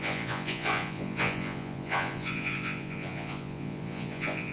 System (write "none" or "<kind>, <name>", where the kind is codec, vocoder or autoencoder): vocoder, Vocos